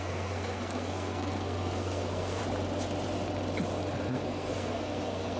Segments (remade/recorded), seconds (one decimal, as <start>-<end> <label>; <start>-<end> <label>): 0.0-2.4 remade; 2.4-4.1 recorded; 4.1-5.4 remade